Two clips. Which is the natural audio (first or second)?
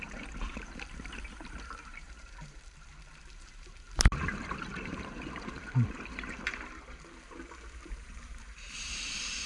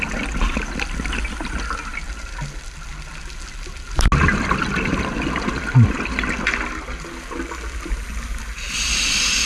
second